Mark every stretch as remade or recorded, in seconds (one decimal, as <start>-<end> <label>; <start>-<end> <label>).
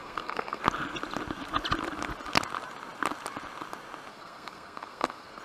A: 0.0-0.6 remade; 0.6-4.1 recorded; 4.1-5.4 remade